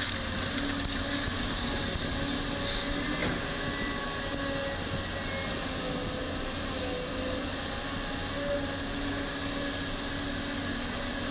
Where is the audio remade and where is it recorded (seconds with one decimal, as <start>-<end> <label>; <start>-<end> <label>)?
0.0-11.3 recorded